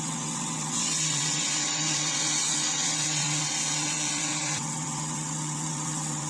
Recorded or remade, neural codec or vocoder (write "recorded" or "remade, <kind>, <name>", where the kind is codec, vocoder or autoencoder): remade, vocoder, WaveNeXt